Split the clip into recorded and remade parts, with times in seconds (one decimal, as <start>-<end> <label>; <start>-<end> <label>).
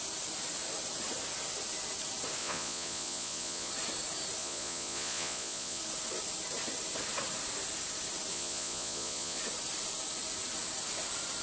0.0-2.4 recorded; 2.4-3.7 remade; 3.7-4.4 recorded; 4.4-5.8 remade; 5.8-8.3 recorded; 8.3-9.4 remade; 9.4-11.4 recorded